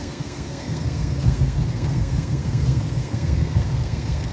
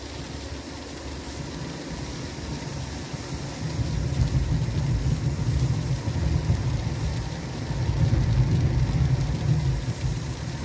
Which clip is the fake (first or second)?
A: first